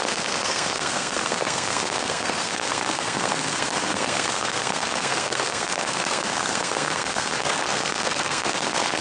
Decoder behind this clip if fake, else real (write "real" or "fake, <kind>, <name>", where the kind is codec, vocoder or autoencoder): fake, codec, SNAC